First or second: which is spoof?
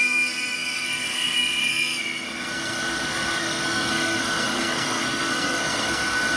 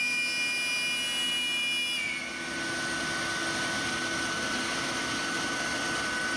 first